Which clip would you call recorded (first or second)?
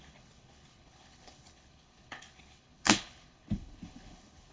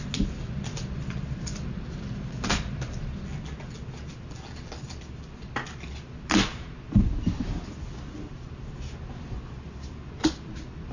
second